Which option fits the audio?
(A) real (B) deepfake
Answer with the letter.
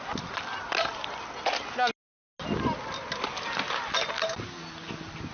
A